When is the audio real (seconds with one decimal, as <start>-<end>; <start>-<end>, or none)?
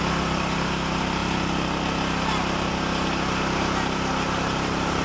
0.0-5.0